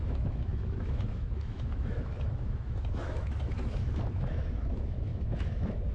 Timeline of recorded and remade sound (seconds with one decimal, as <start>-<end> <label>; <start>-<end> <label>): 0.0-5.9 remade